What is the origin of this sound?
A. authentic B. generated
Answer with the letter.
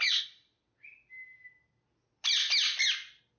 A